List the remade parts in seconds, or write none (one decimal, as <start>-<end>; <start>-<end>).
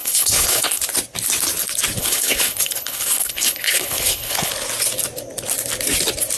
0.0-0.8; 2.0-4.5